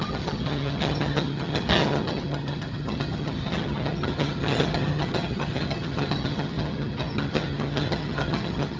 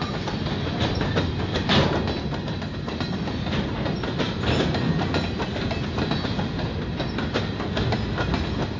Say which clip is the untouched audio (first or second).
second